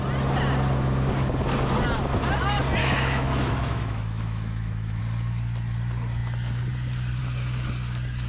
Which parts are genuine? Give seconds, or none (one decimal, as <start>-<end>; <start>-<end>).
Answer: 0.0-2.8; 5.0-8.3